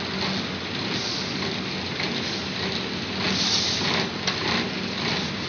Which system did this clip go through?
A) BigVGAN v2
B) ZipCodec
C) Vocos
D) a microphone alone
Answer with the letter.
D